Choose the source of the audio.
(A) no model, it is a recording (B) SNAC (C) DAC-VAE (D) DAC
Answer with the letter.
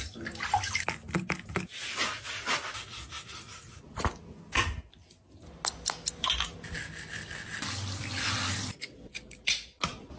A